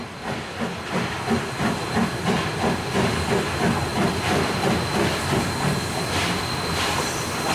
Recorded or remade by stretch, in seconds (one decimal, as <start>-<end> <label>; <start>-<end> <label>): 0.0-7.5 recorded